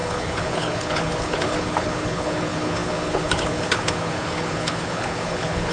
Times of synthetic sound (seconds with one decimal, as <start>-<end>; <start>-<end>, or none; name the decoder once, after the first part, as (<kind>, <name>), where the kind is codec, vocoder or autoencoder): 0.0-5.7 (codec, HILCodec)

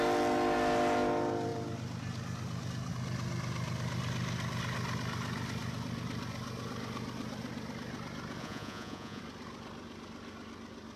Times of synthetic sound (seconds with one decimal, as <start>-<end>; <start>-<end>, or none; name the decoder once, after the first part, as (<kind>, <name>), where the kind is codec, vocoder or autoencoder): 8.4-9.2 (vocoder, Vocos)